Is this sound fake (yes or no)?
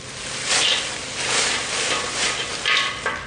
no